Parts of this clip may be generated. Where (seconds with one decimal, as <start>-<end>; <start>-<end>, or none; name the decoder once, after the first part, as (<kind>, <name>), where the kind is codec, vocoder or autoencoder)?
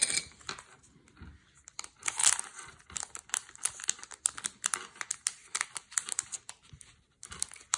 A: none